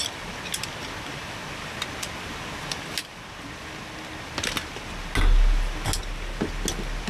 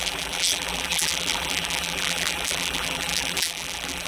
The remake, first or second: second